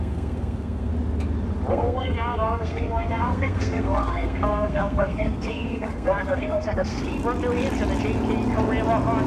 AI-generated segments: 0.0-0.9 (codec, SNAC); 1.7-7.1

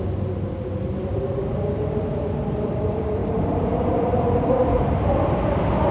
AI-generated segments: 1.1-2.0 (vocoder, BigVGAN v2); 3.2-5.0

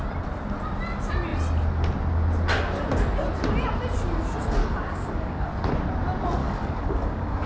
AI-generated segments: 4.6-5.5 (codec, DAC); 6.4-7.5

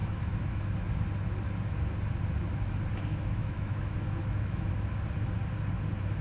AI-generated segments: 0.0-0.5 (autoencoder, DAC-VAE); 3.1-4.7

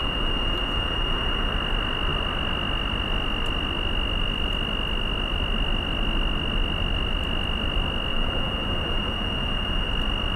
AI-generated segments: 0.0-1.5 (vocoder, BigVGAN v2); 8.1-9.9

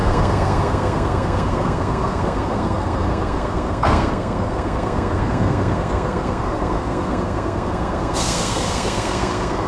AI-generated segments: 0.0-9.7 (codec, SNAC)

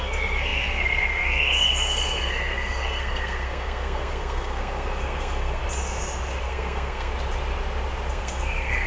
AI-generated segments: 0.0-5.6 (codec, SNAC); 6.4-7.1; 8.1-8.9